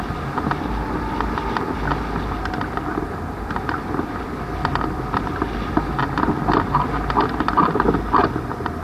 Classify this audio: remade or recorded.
recorded